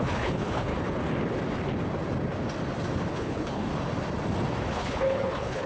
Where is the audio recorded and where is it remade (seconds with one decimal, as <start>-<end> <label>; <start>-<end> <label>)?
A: 0.0-0.7 remade; 0.7-3.1 recorded; 3.1-3.7 remade; 3.7-4.7 recorded; 4.7-5.7 remade